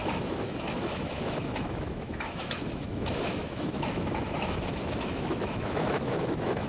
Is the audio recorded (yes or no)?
no